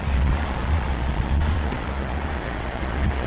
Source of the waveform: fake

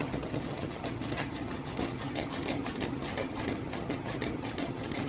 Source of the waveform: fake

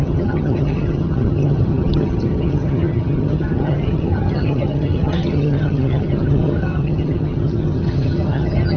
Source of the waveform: fake